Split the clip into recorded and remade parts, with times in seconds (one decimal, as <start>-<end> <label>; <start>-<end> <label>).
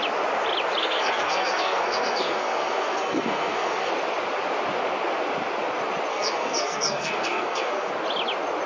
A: 0.0-0.8 recorded; 0.8-3.9 remade; 3.9-6.1 recorded; 6.1-7.9 remade; 7.9-8.7 recorded